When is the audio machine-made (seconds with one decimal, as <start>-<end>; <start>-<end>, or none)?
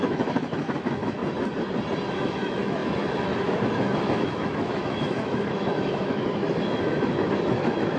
0.0-1.2; 2.1-8.0